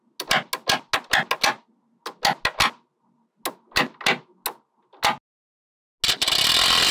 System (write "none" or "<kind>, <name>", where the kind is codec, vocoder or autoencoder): none